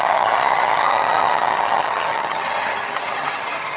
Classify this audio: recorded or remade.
remade